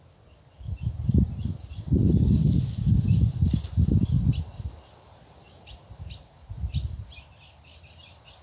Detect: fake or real real